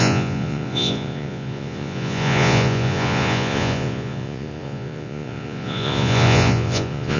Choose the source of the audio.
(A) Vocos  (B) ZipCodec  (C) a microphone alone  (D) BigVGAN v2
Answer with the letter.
A